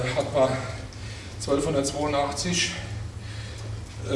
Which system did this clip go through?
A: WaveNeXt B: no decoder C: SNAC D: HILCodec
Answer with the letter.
B